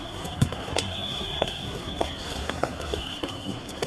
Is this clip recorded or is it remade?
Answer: remade